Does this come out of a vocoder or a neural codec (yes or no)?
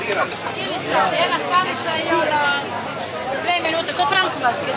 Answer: no